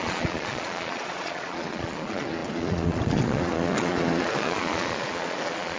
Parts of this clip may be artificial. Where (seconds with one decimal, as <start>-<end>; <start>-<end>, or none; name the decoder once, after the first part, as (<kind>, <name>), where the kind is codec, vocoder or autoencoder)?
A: 0.0-5.8 (vocoder, Vocos)